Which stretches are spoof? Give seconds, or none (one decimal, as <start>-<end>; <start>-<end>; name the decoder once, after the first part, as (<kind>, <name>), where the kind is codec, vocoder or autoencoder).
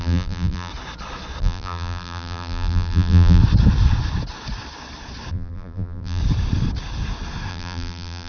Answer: 0.0-0.7 (vocoder, BigVGAN v2); 1.4-3.4; 5.3-6.2; 7.5-8.3